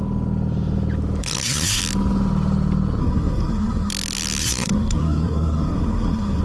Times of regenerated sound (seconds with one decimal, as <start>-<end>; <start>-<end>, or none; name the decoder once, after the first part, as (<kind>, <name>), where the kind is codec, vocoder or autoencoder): 1.2-1.8 (codec, SNAC); 3.0-3.9; 4.4-6.4